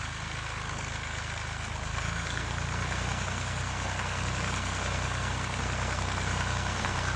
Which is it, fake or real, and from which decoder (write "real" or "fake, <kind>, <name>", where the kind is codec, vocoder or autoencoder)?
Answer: fake, codec, SNAC